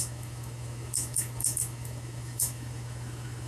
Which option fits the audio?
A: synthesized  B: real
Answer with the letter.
A